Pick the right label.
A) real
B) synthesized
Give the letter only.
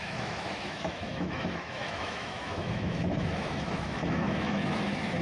B